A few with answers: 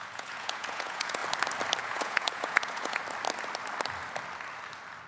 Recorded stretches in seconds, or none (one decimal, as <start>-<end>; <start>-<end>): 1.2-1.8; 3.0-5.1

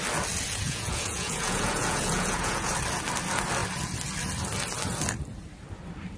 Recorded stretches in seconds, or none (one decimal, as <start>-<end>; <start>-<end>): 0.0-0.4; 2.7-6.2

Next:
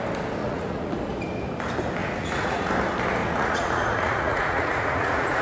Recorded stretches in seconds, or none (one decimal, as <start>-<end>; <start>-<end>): 0.0-0.4; 0.9-2.0; 2.7-3.2

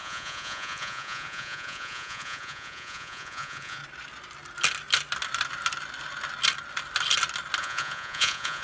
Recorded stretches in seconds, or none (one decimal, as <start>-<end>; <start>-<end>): 3.8-7.6